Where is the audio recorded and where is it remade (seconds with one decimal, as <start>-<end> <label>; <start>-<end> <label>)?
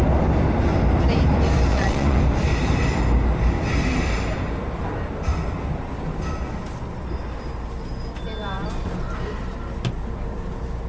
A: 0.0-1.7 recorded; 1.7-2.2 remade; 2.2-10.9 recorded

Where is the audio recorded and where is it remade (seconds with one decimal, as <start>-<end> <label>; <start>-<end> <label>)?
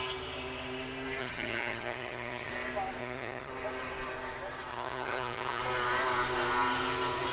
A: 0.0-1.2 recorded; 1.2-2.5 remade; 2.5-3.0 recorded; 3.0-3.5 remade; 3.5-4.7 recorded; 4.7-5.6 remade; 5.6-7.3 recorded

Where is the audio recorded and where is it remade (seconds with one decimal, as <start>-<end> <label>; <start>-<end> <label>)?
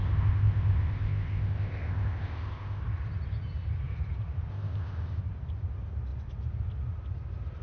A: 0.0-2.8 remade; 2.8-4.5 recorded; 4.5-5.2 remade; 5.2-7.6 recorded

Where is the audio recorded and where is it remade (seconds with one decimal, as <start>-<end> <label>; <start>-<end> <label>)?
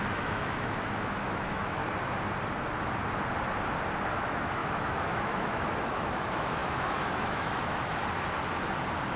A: 0.0-1.8 remade; 1.8-4.1 recorded; 4.1-8.0 remade; 8.0-9.2 recorded